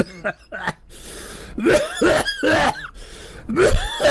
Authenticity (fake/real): fake